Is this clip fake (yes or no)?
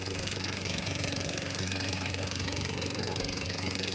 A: yes